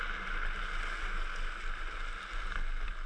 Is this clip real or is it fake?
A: real